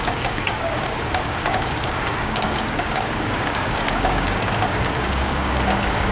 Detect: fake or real fake